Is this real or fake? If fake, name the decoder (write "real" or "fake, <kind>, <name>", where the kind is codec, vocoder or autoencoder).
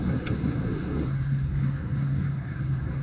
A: fake, codec, SNAC